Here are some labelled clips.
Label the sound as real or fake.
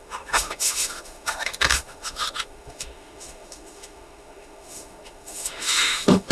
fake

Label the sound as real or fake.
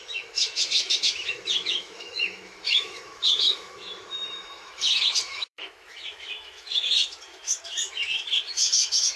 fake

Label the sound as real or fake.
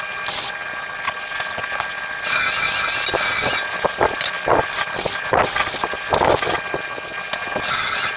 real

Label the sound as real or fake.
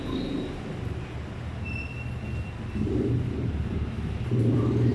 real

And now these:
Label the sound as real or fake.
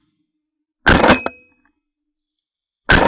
real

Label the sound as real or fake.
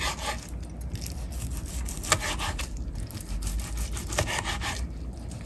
real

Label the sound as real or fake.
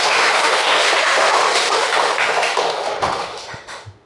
fake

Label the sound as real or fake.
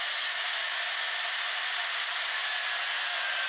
real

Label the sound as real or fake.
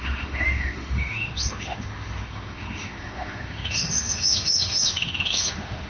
fake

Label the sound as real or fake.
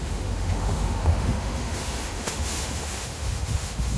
fake